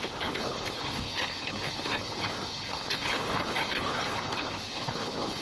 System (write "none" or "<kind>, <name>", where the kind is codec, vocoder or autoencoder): codec, HILCodec